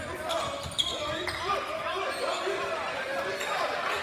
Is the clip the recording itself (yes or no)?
yes